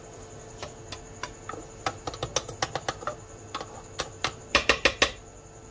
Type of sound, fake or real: real